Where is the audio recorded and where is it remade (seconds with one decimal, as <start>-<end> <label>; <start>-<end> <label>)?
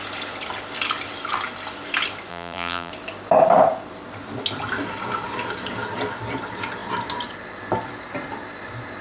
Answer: 0.0-2.3 recorded; 2.3-2.9 remade; 2.9-9.0 recorded